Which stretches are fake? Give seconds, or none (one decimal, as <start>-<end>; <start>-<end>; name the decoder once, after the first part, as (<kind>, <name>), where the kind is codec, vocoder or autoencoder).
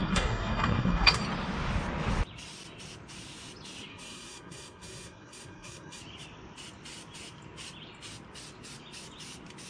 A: 0.0-1.2 (codec, SNAC); 3.9-6.0